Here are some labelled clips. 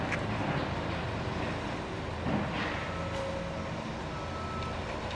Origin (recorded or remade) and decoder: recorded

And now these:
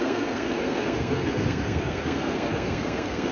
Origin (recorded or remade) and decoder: remade, codec, SNAC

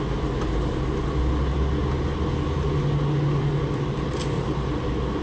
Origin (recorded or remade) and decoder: recorded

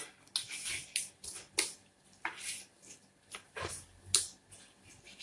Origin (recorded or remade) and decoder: recorded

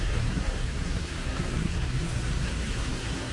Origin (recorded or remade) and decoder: remade, codec, SNAC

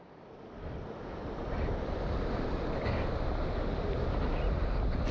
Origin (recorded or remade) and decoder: recorded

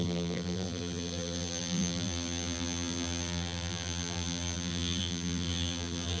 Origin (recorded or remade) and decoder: remade, vocoder, BigVGAN v2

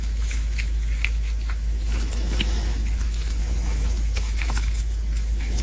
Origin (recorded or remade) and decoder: remade, autoencoder, DAC-VAE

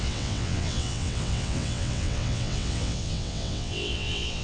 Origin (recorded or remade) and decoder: remade, vocoder, WaveNeXt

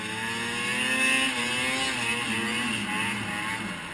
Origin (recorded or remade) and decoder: recorded